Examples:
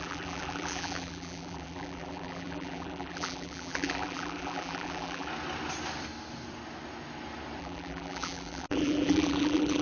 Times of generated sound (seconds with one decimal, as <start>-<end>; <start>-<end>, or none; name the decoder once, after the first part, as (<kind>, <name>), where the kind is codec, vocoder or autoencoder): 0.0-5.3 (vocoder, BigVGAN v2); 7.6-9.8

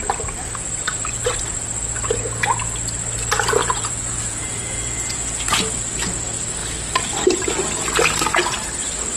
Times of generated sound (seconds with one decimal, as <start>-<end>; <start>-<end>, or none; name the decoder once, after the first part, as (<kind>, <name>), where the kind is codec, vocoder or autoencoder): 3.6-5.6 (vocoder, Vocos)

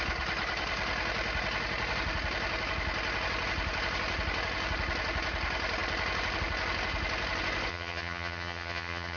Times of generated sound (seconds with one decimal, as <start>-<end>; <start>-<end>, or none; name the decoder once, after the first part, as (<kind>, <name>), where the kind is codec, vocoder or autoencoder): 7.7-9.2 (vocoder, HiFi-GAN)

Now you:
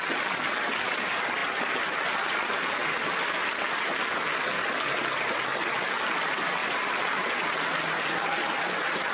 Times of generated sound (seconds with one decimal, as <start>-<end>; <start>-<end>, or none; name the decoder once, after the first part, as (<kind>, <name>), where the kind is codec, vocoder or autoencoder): none

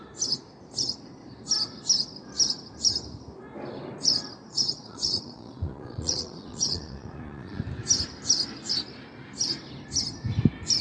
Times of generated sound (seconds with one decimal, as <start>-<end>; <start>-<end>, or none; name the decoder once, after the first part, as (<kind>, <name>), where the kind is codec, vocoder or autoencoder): 4.5-7.6 (vocoder, Vocos)

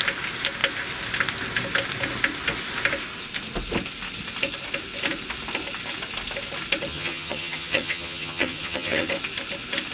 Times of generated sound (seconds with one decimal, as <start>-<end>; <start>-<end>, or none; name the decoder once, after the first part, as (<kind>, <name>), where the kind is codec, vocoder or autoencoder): 6.9-9.1 (vocoder, HiFi-GAN)

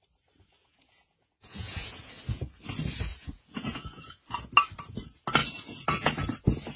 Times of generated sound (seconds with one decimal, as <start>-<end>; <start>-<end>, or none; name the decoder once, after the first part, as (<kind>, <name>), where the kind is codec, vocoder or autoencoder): 0.6-2.1 (vocoder, Vocos); 3.1-4.2; 5.4-6.2